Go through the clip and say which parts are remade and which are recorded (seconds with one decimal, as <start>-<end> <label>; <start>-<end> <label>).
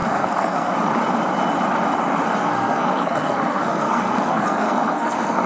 0.0-0.7 remade; 0.7-2.4 recorded; 2.4-5.5 remade